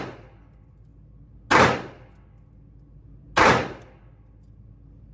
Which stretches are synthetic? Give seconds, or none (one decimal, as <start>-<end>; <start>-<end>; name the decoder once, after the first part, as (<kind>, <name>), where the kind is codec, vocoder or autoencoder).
none